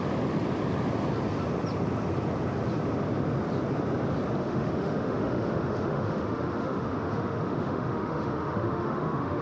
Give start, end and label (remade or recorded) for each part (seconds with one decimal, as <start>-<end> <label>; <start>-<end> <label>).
0.0-4.4 recorded; 4.4-9.4 remade